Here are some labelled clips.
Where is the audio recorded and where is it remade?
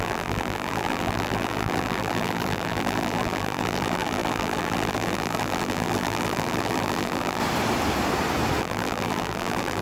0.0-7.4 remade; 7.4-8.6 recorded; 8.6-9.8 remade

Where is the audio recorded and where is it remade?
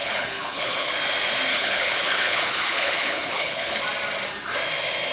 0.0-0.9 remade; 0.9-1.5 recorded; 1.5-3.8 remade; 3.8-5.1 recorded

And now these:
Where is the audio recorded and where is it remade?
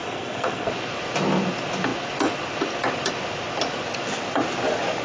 0.0-0.7 remade; 0.7-5.0 recorded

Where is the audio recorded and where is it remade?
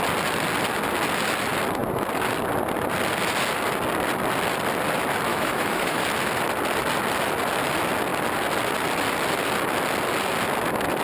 0.0-5.3 recorded; 5.3-6.0 remade; 6.0-11.0 recorded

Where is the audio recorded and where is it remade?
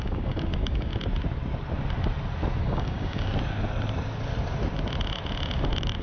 0.0-0.9 remade; 0.9-2.6 recorded; 2.6-3.3 remade; 3.3-6.0 recorded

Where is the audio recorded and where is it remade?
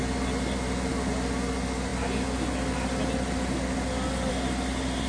0.0-5.1 recorded